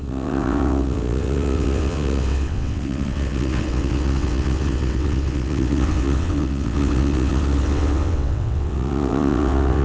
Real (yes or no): no